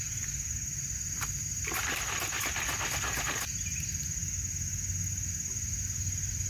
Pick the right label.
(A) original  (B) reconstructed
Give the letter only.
A